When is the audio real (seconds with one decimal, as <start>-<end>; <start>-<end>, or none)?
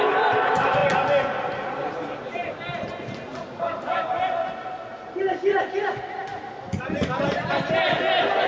0.0-8.5